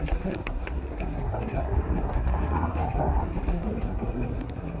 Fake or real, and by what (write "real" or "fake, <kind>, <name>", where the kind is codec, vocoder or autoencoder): fake, codec, SNAC